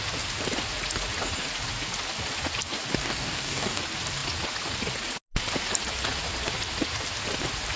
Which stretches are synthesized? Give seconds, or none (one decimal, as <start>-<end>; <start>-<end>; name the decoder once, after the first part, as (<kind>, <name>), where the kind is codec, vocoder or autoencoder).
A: 3.0-3.8 (codec, DAC)